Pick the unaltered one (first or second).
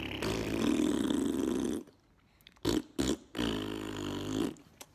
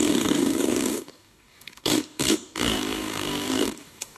first